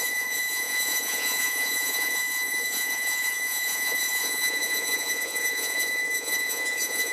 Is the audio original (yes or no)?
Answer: no